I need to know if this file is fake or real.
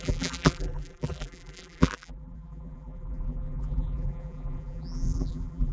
fake